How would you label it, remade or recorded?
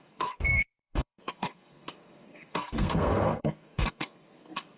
remade